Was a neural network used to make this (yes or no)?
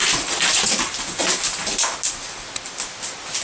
no